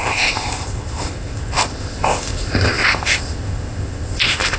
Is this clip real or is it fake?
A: fake